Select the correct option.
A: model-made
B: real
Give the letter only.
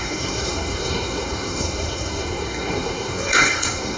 A